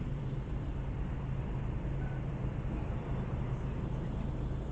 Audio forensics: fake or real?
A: fake